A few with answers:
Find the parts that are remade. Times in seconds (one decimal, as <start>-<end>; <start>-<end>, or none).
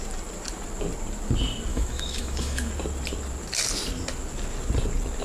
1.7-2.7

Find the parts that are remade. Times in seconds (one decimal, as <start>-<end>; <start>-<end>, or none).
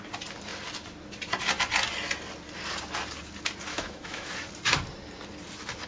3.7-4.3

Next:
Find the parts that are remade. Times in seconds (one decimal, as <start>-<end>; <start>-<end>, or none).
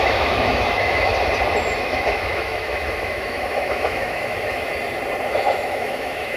0.0-1.1; 1.8-4.7; 5.3-6.4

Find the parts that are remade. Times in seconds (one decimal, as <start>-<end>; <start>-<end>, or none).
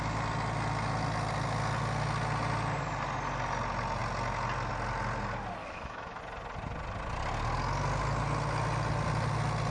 5.6-6.2